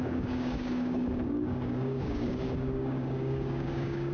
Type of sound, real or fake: fake